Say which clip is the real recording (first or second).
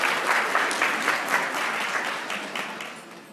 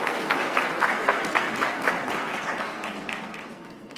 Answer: first